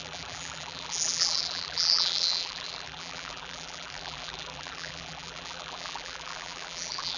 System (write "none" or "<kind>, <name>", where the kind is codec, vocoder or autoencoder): vocoder, BigVGAN v2